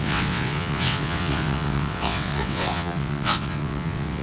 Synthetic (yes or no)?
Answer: yes